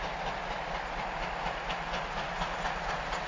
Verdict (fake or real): real